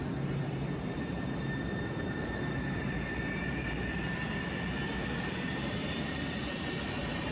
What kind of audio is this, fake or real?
fake